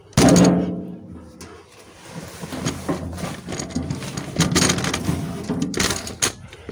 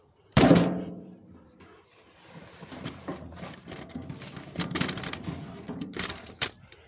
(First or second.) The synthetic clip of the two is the second